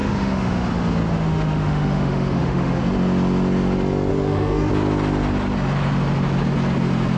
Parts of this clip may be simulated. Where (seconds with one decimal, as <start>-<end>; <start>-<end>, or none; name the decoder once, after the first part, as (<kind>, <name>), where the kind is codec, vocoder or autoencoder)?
0.0-0.7 (autoencoder, DAC-VAE); 1.1-2.8; 4.1-4.7